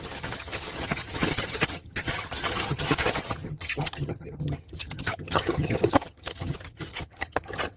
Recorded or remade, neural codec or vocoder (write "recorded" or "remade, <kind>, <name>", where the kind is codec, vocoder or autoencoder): remade, vocoder, HiFi-GAN